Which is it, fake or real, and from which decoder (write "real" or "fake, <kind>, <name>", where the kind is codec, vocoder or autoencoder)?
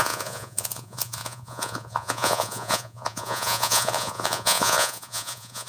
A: fake, vocoder, Vocos